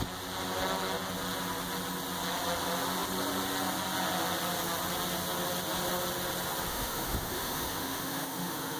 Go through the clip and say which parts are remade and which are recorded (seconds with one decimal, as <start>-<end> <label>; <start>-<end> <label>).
0.0-6.7 recorded; 6.7-8.8 remade